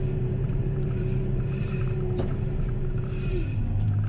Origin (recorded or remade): remade